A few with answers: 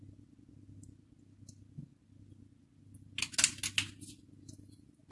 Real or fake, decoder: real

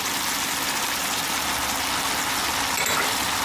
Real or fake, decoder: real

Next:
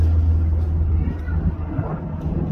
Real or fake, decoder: real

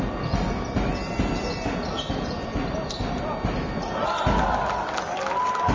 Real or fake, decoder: real